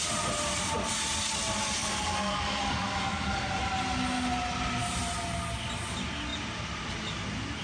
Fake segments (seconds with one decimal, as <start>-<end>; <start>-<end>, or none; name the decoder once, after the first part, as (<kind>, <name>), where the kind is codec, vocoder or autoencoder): 1.8-3.6 (codec, DAC)